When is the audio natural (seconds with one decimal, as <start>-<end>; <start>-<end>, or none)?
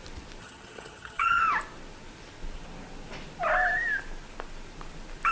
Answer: 0.0-0.4; 1.4-5.3